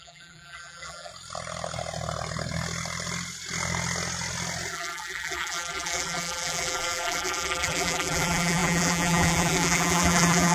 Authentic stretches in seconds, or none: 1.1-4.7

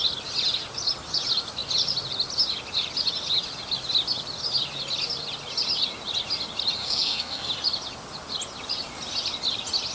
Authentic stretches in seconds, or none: 0.0-6.8; 7.5-9.9

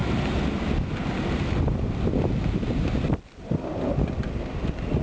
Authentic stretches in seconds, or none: 0.0-5.0

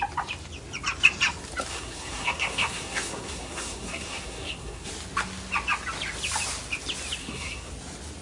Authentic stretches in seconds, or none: 0.0-1.7; 4.9-7.2; 7.7-8.2

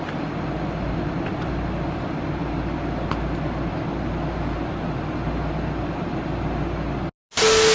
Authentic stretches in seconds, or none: 0.0-7.7

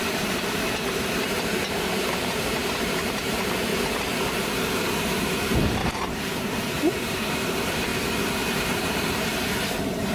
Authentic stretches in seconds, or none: 3.7-5.0; 7.9-8.6

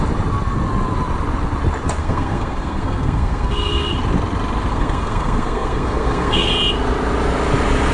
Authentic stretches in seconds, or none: 0.0-2.0; 3.9-4.7; 6.5-7.9

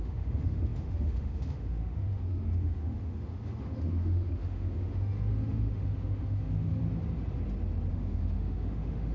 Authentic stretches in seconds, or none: 6.8-7.9